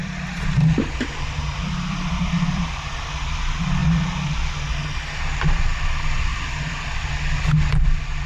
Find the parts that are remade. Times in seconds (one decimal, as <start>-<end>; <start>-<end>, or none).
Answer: 0.0-3.4; 6.3-7.1